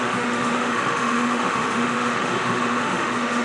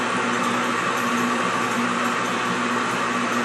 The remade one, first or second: first